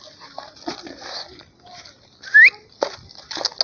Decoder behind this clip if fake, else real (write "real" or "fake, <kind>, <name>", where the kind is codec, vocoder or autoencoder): real